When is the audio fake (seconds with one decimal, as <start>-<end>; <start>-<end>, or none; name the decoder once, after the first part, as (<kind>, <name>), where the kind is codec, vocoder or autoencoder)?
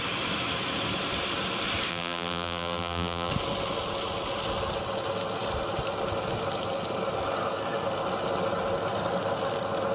1.9-3.3 (vocoder, BigVGAN v2)